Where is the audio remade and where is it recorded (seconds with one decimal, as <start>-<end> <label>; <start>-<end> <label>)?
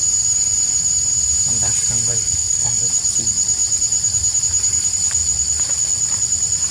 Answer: 0.0-2.2 recorded; 2.2-2.8 remade; 2.8-6.7 recorded